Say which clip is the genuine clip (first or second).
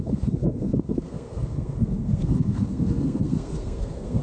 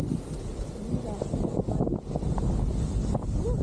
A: second